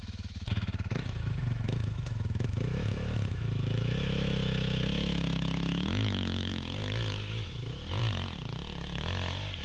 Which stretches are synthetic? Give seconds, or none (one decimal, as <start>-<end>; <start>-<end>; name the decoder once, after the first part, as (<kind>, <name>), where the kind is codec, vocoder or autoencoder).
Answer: 0.0-6.5 (autoencoder, DAC-VAE); 7.3-8.0